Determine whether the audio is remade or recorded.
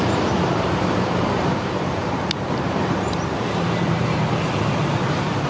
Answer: remade